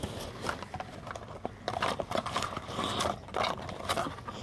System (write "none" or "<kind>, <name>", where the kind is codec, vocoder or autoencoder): none